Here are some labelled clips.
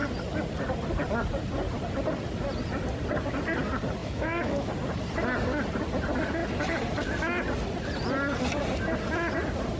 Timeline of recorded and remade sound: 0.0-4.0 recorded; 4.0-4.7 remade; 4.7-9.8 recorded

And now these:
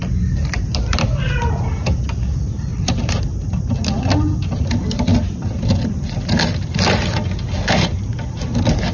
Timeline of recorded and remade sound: 0.0-2.7 recorded; 2.7-3.2 remade; 3.2-8.9 recorded

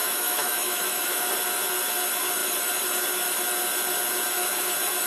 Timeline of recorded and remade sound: 0.0-1.3 remade; 1.3-5.1 recorded

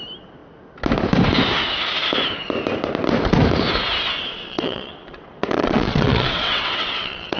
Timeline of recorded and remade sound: 0.0-4.3 recorded; 4.3-7.4 remade